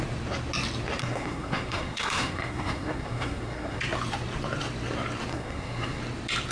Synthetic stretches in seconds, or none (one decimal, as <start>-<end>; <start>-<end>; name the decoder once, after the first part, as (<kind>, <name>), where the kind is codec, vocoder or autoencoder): 1.0-3.8 (codec, SNAC); 5.3-6.0